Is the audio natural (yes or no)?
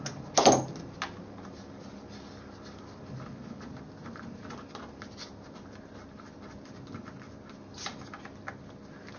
yes